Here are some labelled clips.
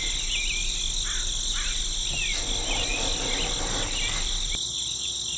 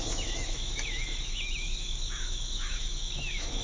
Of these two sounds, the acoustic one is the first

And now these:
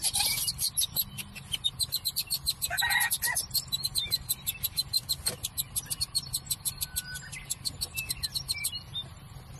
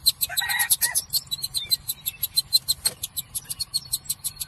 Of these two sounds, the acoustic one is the first